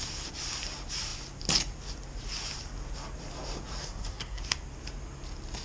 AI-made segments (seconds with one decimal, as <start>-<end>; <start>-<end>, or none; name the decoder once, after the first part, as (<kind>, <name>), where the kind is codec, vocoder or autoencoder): 3.8-4.4 (codec, SNAC)